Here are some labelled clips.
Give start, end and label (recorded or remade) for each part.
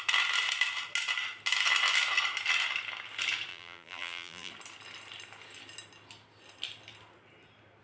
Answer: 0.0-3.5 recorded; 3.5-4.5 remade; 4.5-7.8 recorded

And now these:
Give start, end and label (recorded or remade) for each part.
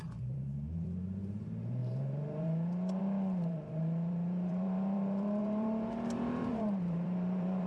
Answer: 0.0-7.7 remade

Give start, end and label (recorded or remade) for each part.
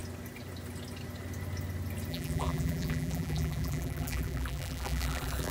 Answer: 0.0-2.1 recorded; 2.1-5.5 remade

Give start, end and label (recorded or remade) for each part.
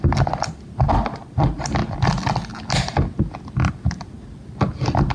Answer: 0.0-5.1 recorded